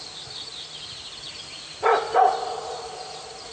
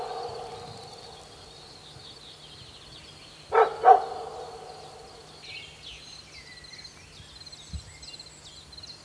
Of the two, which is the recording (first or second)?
second